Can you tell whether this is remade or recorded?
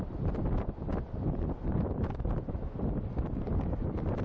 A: recorded